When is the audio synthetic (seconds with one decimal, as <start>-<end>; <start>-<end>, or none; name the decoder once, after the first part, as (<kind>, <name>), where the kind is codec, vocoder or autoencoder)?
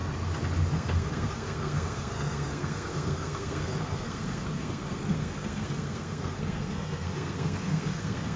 0.7-8.4 (codec, SNAC)